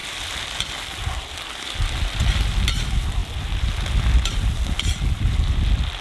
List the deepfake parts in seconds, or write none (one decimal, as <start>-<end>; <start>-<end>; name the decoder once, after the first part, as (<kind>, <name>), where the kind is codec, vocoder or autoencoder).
none